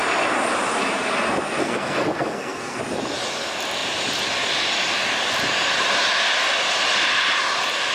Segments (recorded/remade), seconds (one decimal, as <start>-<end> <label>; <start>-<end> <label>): 0.0-1.6 recorded; 1.6-2.8 remade; 2.8-7.9 recorded